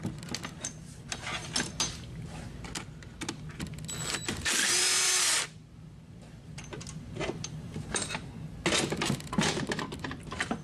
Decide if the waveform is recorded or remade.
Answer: recorded